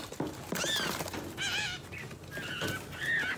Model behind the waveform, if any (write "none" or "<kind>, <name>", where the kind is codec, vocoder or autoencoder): none